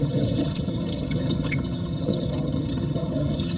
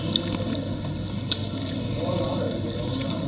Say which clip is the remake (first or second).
first